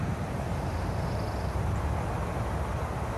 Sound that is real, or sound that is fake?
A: fake